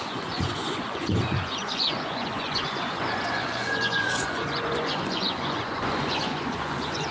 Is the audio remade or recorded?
remade